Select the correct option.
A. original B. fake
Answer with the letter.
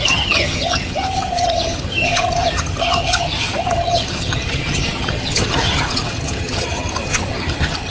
B